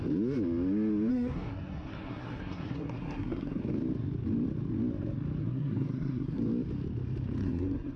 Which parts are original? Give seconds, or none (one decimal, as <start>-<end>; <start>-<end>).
0.0-1.1; 3.6-5.4; 6.4-7.4